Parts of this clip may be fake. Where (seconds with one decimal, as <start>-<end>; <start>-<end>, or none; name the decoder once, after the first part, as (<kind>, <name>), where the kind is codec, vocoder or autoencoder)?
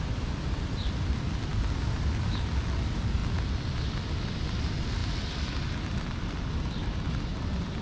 none